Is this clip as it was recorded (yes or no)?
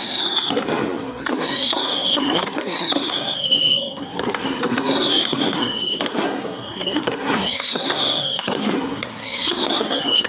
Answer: no